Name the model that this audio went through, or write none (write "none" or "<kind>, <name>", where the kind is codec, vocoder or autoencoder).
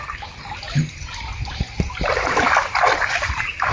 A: none